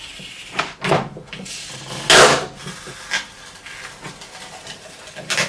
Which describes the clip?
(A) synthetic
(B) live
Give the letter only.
B